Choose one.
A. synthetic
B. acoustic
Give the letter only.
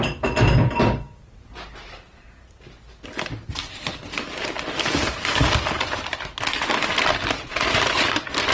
B